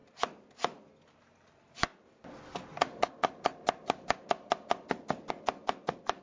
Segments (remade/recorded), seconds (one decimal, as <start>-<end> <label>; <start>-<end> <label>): 0.0-6.2 recorded

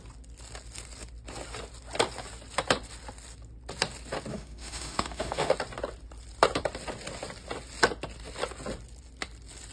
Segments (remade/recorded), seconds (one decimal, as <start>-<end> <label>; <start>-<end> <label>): 0.0-4.3 recorded; 4.3-5.5 remade; 5.5-9.7 recorded

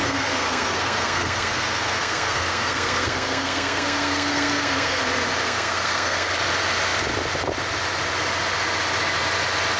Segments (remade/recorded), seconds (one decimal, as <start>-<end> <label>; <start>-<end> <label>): 0.0-5.0 remade; 5.0-5.4 recorded; 5.4-6.3 remade; 6.3-9.8 recorded

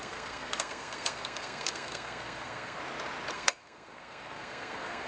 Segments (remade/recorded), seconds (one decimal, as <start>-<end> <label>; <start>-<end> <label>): 0.0-2.8 remade; 2.8-3.3 recorded; 3.3-5.1 remade

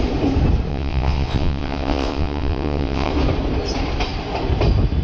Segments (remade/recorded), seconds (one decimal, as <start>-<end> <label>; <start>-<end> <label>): 0.0-0.7 recorded; 0.7-3.1 remade; 3.1-5.0 recorded

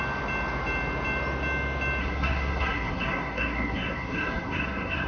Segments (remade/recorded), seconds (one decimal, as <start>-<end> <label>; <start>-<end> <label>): 0.0-2.0 recorded; 2.0-5.1 remade

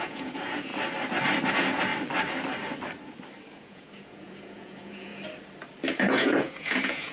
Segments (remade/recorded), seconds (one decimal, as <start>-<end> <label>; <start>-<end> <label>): 0.0-0.7 remade; 0.7-1.5 recorded; 1.5-1.9 remade; 1.9-3.5 recorded; 3.5-5.1 remade; 5.1-5.9 recorded; 5.9-7.1 remade